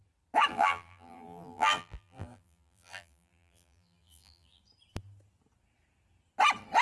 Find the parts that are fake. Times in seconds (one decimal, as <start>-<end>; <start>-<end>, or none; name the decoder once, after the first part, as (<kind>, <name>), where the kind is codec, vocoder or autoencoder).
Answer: 0.5-4.6 (vocoder, BigVGAN v2)